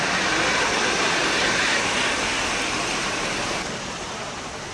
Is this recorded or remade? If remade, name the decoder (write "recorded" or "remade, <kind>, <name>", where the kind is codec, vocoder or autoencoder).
remade, vocoder, BigVGAN v2